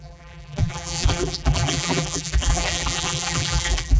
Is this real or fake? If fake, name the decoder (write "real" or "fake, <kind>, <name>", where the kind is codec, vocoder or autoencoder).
fake, vocoder, BigVGAN v2